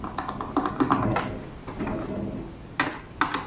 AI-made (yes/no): no